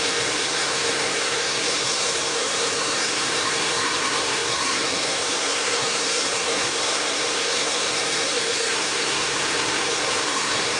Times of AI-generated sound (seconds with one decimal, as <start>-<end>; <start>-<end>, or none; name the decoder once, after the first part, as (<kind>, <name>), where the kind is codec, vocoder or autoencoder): 0.0-10.8 (codec, SNAC)